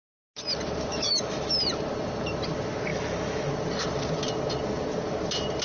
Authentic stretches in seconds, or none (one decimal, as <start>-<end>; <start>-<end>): 0.0-0.9; 1.5-2.9; 3.5-5.6